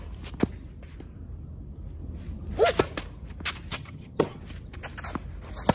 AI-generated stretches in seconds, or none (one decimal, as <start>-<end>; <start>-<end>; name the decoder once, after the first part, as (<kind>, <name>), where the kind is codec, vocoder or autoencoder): 3.7-4.4 (vocoder, HiFi-GAN)